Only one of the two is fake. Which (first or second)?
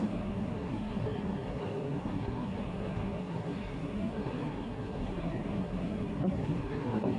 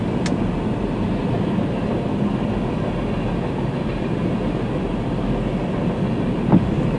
first